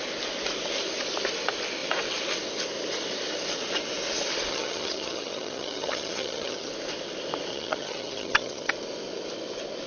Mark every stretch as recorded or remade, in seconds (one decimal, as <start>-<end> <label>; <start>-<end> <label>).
0.0-4.5 recorded; 4.5-6.7 remade; 6.7-7.5 recorded; 7.5-8.7 remade; 8.7-9.9 recorded